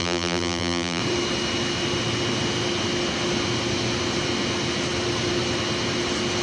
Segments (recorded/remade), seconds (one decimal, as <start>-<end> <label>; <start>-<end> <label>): 0.0-1.0 remade; 1.0-6.4 recorded